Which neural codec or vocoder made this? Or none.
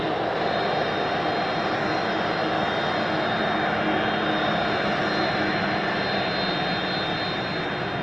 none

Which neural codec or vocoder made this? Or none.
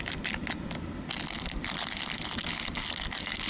none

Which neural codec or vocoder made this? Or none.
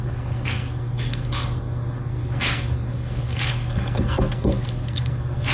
codec, SNAC